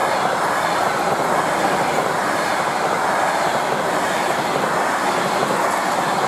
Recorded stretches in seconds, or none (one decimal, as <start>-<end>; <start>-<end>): 0.0-6.3